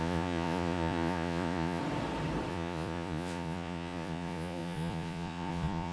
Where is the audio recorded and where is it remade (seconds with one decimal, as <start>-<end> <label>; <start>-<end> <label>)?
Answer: 0.0-1.8 remade; 1.8-2.5 recorded; 2.5-5.9 remade